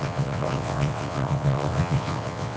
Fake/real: fake